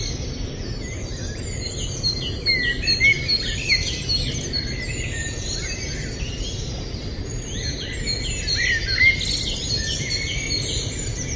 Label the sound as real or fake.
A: real